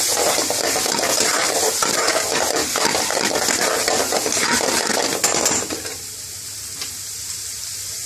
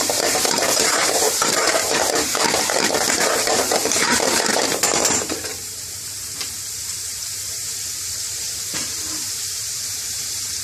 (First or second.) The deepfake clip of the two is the second